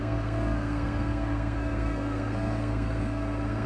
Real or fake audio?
fake